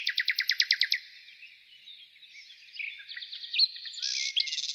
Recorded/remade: recorded